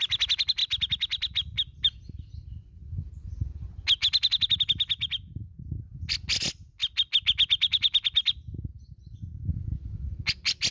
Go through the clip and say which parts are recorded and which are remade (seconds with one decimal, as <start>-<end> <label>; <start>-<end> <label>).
0.0-10.7 recorded

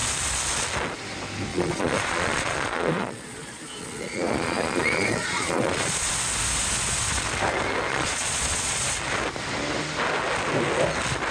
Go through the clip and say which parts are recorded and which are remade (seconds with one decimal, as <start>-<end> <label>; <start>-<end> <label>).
0.0-1.5 recorded; 1.5-6.1 remade; 6.1-7.9 recorded; 7.9-8.8 remade; 8.8-11.3 recorded